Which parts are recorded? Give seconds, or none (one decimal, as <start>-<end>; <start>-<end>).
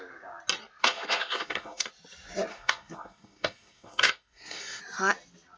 0.0-0.8; 1.9-2.5; 4.8-5.6